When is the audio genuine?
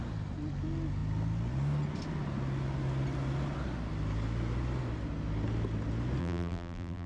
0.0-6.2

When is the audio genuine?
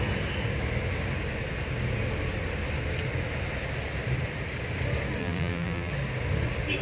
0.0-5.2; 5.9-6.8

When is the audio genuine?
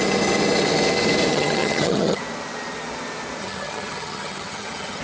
0.0-1.3; 2.2-3.4